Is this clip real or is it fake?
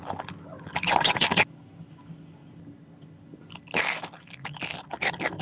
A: real